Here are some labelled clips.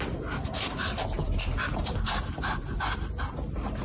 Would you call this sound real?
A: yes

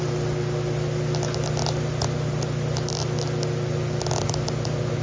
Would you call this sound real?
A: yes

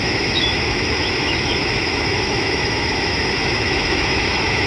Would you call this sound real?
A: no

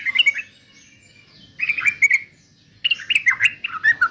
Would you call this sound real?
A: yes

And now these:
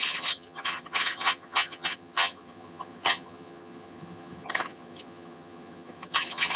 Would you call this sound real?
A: no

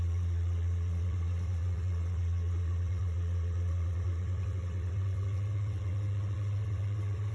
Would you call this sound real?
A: no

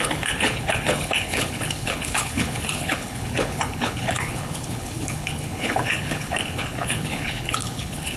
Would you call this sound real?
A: no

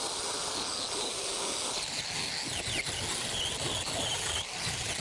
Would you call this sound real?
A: yes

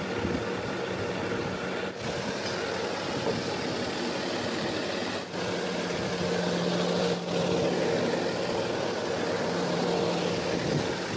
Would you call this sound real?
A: yes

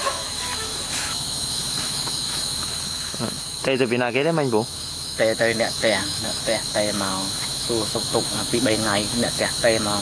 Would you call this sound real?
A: no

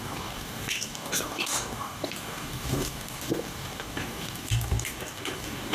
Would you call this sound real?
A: no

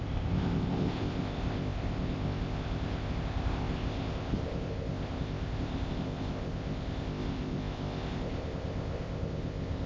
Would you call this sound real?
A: no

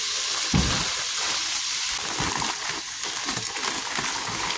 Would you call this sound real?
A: yes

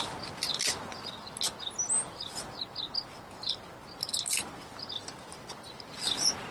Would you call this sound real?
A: yes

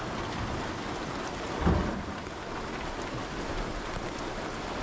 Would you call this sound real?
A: yes